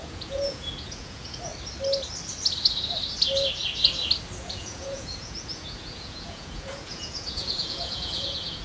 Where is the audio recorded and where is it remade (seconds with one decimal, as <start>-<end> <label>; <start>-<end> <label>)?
0.0-1.5 remade; 1.5-4.4 recorded; 4.4-8.6 remade